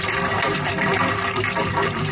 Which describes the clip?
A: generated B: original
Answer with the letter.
A